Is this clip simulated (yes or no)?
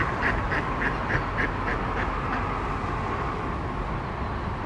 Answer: no